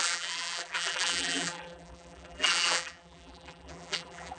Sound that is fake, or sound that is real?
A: fake